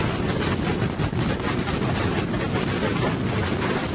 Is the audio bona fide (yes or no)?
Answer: yes